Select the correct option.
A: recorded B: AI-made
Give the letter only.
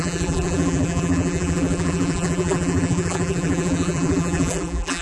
B